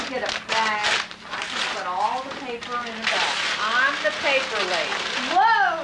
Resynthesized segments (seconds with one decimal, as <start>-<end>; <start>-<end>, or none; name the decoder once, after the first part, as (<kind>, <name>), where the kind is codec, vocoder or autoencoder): none

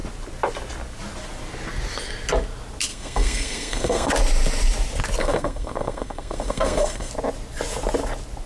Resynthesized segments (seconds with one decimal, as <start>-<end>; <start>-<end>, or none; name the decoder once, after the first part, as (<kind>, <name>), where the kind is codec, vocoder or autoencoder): 2.9-4.1 (codec, SNAC); 5.2-7.1

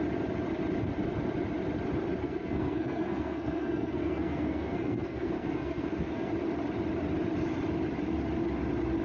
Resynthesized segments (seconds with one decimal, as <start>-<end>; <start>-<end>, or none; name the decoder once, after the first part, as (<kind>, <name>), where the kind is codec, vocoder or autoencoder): 2.2-6.3 (codec, SNAC)

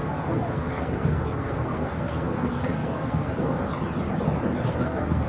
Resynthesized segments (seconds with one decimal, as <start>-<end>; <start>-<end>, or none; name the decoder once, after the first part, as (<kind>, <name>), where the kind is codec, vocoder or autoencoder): 0.0-3.6 (codec, SNAC); 4.7-5.3

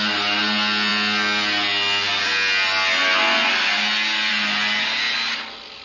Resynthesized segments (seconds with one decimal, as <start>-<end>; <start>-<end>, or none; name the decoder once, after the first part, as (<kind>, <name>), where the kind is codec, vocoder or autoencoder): none

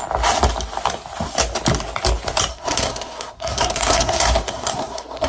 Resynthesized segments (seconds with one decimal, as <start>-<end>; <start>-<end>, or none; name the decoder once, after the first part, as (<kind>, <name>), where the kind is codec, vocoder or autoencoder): 2.5-5.3 (codec, SNAC)